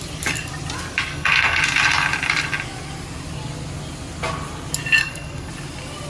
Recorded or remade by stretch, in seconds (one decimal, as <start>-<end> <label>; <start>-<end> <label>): 0.0-1.1 recorded; 1.1-1.6 remade; 1.6-5.0 recorded; 5.0-5.5 remade; 5.5-6.1 recorded